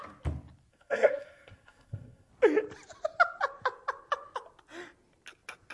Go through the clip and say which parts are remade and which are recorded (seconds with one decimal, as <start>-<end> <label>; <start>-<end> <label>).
0.0-0.7 recorded; 0.7-2.3 remade; 2.3-5.7 recorded